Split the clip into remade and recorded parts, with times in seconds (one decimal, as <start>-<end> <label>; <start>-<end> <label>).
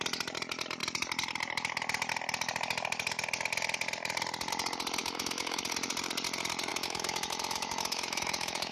0.0-5.0 recorded; 5.0-5.6 remade; 5.6-6.7 recorded; 6.7-8.7 remade